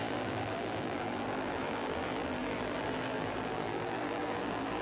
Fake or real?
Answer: fake